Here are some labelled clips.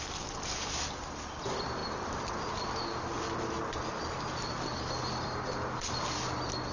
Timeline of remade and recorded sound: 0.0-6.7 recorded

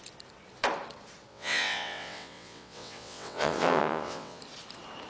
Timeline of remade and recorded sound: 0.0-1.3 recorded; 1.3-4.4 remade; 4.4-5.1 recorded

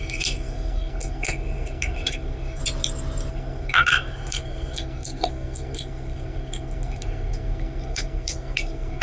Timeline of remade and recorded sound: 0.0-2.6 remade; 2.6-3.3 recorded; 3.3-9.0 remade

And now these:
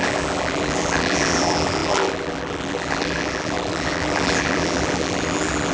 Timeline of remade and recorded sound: 0.0-5.7 remade

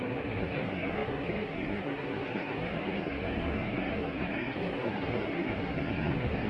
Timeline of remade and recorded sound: 0.0-6.5 remade